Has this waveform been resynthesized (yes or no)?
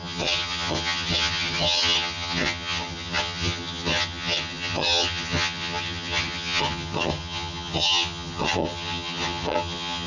yes